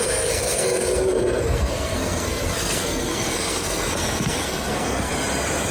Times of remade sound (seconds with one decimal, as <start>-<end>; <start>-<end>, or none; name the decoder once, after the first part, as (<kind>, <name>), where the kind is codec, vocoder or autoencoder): 0.0-5.1 (codec, SNAC)